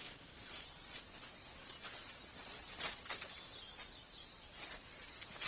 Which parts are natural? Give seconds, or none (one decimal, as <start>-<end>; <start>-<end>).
1.0-1.5; 3.2-5.5